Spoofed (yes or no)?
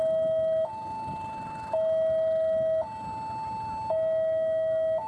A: no